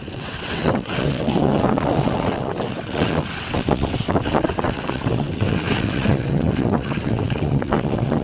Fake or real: fake